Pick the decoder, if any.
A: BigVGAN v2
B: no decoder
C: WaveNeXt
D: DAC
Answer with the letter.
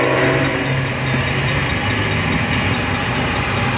B